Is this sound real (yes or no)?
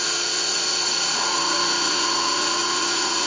no